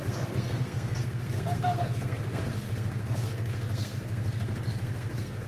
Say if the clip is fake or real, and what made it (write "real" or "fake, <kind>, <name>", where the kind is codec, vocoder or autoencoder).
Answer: fake, codec, SNAC